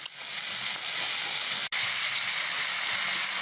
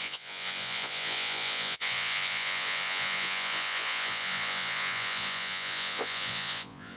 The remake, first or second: second